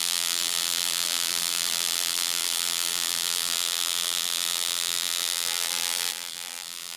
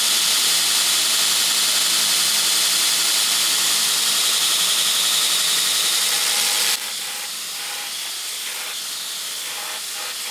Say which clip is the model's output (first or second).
first